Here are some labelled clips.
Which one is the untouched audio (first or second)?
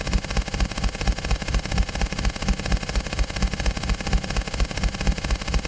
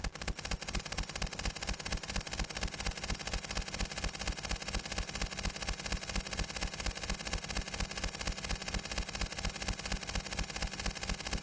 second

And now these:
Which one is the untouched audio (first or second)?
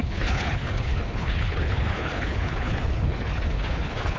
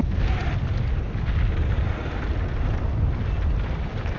second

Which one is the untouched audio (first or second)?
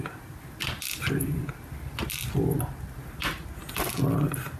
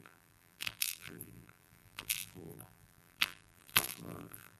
first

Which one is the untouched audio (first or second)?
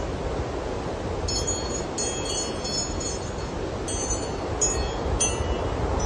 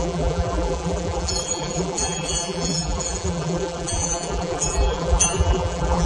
first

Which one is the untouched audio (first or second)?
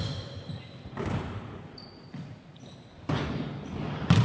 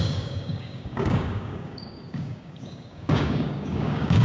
first